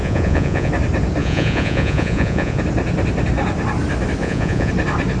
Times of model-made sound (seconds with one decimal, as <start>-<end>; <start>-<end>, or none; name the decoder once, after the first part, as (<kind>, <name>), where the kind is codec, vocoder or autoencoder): 0.0-0.7 (vocoder, Vocos); 1.2-2.6; 4.2-4.7

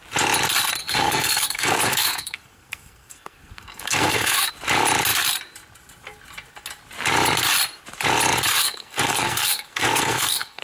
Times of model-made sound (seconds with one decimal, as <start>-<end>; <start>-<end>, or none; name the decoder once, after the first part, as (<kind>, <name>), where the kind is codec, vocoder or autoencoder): 0.8-4.5 (codec, SNAC); 8.5-10.6

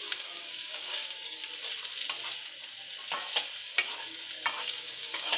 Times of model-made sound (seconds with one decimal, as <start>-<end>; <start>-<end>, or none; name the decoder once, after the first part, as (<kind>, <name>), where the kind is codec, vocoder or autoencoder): 0.0-1.4 (codec, DAC); 4.6-5.4

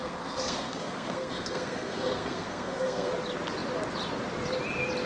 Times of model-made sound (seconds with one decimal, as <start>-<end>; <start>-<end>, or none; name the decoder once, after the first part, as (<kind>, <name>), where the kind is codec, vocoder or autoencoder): 0.0-3.1 (codec, SNAC)

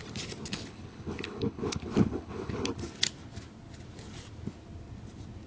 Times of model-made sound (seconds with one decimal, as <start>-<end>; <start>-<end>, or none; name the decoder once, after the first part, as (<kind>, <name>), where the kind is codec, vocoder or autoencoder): 0.5-2.7 (codec, HILCodec)

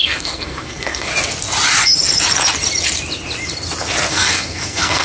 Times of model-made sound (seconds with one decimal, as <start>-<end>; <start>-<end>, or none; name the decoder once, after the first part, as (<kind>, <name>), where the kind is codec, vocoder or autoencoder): 0.0-1.1 (codec, SNAC); 4.1-5.0

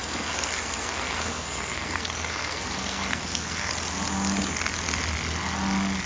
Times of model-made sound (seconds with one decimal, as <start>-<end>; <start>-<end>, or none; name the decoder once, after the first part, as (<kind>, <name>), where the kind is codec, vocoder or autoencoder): 0.0-3.7 (codec, SNAC)